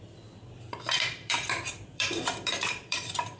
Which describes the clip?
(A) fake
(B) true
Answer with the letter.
A